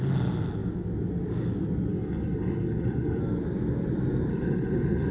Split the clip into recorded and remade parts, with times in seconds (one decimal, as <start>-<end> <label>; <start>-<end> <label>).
0.0-1.9 recorded; 1.9-3.2 remade; 3.2-4.3 recorded; 4.3-5.1 remade